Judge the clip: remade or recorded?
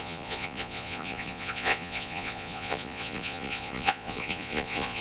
remade